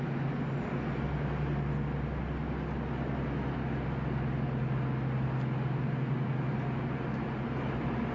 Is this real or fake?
real